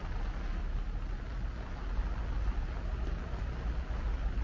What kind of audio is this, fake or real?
real